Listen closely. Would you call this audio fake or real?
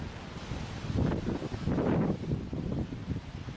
real